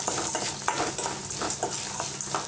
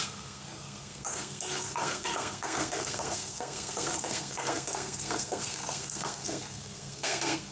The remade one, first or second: second